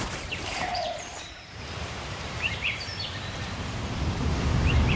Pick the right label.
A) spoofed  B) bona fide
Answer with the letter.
A